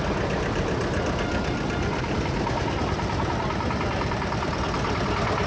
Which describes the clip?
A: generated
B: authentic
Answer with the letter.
B